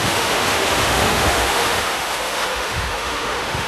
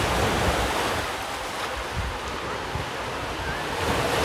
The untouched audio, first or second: second